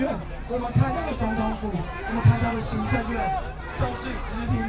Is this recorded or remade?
recorded